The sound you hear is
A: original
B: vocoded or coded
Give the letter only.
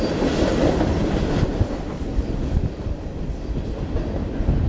A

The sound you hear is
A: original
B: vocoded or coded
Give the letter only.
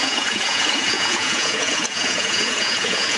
B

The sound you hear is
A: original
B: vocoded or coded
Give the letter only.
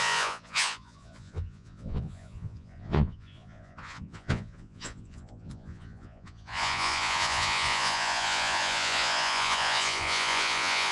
B